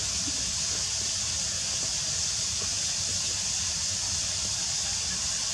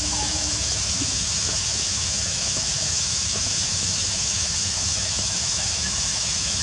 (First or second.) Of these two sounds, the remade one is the second